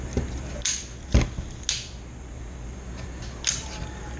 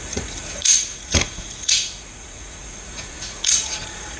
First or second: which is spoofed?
second